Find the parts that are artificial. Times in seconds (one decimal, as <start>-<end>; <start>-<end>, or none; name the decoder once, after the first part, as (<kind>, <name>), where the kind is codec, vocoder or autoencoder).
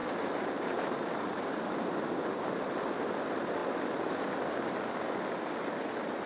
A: 0.0-1.6 (vocoder, BigVGAN v2)